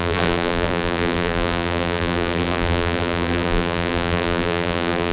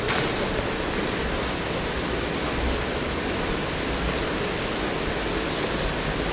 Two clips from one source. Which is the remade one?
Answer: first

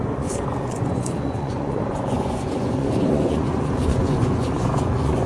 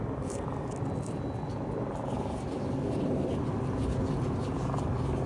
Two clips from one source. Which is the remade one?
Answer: first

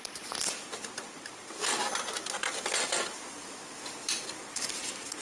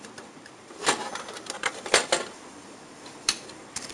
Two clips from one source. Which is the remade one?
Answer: second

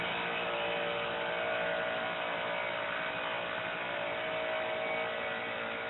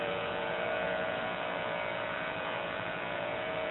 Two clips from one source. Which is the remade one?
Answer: second